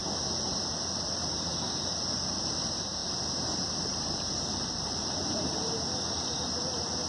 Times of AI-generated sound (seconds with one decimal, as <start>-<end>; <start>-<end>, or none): 1.5-2.5; 3.0-5.7